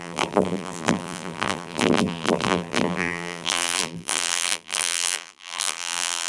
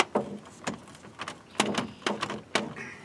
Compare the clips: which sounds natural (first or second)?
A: second